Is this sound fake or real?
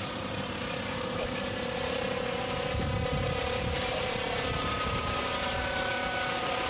fake